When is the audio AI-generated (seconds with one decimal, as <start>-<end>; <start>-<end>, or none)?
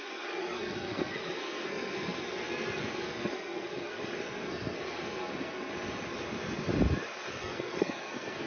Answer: 0.0-5.7; 7.3-8.5